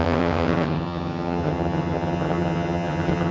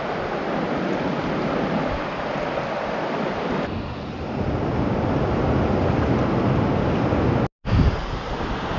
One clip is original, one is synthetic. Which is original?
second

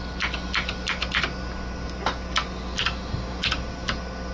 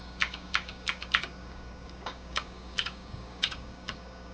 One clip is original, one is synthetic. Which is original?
first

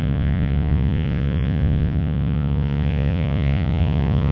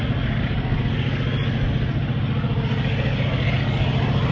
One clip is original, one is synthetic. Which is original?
second